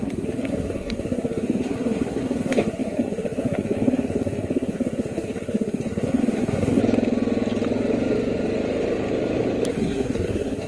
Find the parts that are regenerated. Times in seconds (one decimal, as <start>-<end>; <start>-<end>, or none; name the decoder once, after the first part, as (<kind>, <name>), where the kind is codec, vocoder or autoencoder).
0.0-6.8 (codec, SNAC); 9.7-10.7